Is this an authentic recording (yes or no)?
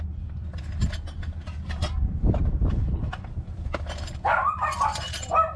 yes